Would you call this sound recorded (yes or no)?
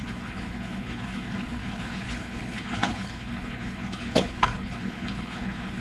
no